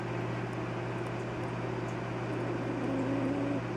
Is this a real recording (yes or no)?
yes